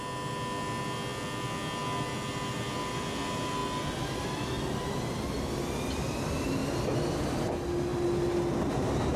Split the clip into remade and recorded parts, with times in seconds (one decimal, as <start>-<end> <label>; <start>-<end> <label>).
0.0-9.2 recorded